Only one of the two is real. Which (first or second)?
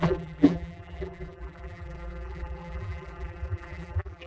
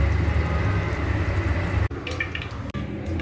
second